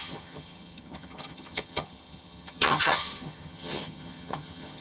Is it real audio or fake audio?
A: fake